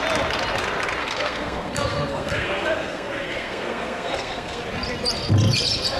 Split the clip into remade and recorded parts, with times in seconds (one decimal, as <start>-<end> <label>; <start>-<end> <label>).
0.0-1.0 recorded; 1.0-4.6 remade; 4.6-6.0 recorded